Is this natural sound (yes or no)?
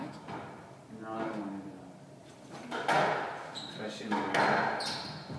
yes